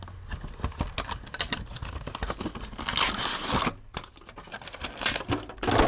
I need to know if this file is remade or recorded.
recorded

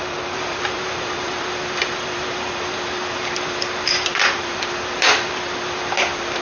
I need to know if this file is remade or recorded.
remade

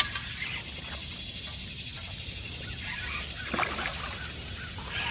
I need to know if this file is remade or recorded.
recorded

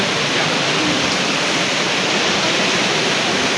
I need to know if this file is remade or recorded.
remade